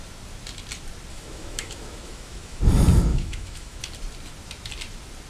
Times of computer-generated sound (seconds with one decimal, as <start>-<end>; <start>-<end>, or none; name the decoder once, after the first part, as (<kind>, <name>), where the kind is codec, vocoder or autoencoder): 1.1-2.6 (autoencoder, DAC-VAE); 3.1-3.8

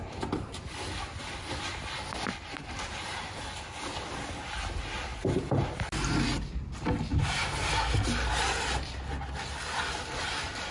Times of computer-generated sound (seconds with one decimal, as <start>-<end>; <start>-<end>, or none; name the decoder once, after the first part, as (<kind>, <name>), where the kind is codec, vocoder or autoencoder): none

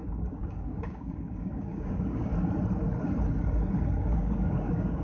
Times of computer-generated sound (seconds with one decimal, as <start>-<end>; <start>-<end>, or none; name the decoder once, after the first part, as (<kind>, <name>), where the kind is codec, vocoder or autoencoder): 0.0-2.3 (codec, DAC); 4.0-5.0

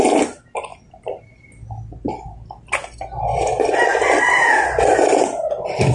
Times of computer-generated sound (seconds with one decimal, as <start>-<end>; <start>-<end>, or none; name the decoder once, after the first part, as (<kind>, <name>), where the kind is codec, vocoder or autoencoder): 0.7-2.5 (vocoder, BigVGAN v2)

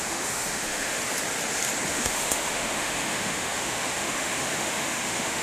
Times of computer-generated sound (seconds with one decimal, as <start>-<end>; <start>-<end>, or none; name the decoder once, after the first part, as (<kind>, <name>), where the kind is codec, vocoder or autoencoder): 0.0-1.0 (autoencoder, DAC-VAE); 1.9-5.4

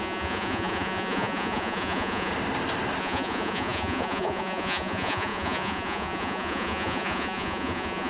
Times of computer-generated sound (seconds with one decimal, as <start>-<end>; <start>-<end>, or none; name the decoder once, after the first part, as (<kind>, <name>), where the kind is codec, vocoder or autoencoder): 0.0-2.3 (vocoder, Vocos); 3.0-8.1